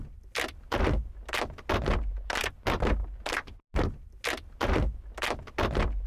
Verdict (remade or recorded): recorded